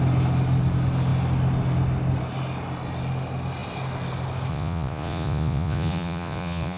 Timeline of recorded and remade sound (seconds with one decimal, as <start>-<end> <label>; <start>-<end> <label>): 0.0-4.5 recorded; 4.5-6.8 remade